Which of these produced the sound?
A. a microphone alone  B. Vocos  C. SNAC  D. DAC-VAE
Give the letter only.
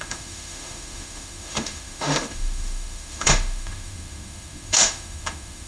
D